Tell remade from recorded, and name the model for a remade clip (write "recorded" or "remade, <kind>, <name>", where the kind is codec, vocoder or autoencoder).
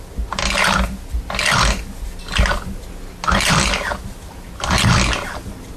recorded